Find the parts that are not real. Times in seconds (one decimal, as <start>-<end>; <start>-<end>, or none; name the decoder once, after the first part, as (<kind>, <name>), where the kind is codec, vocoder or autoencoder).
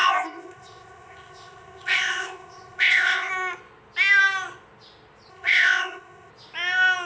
0.0-3.3 (codec, ZipCodec); 5.3-6.3